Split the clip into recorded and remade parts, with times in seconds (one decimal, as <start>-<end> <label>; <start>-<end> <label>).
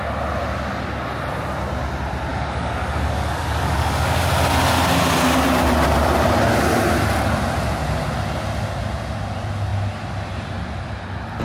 0.0-2.3 recorded; 2.3-4.3 remade; 4.3-11.4 recorded